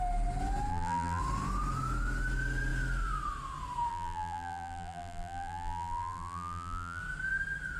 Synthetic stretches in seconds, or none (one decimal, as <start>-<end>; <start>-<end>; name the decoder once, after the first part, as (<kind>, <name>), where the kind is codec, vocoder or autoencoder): 0.7-1.2 (vocoder, BigVGAN v2); 3.9-7.0